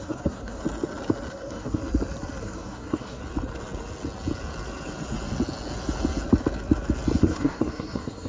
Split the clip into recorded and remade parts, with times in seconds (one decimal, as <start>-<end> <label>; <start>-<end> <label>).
0.0-0.6 remade; 0.6-1.3 recorded; 1.3-1.8 remade; 1.8-2.4 recorded; 2.4-3.2 remade; 3.2-7.2 recorded; 7.2-8.3 remade